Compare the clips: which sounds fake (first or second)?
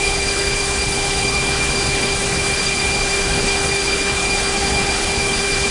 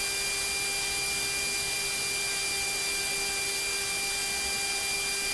first